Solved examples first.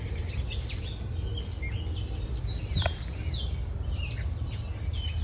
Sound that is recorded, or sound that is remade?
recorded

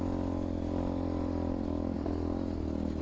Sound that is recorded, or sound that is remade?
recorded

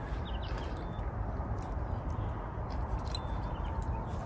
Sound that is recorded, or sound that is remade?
recorded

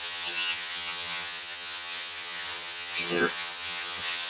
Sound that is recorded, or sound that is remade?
remade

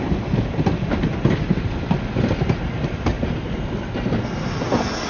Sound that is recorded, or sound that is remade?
recorded